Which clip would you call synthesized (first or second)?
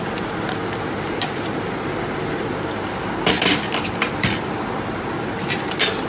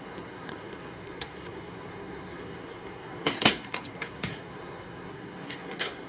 second